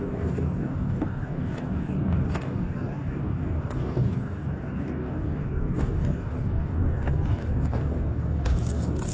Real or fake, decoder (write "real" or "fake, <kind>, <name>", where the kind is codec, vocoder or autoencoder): fake, codec, DAC